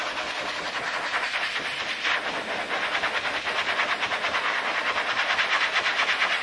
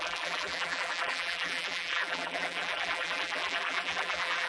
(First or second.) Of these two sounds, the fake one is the second